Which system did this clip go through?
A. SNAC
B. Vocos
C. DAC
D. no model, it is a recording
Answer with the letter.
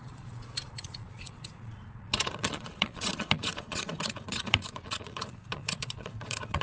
B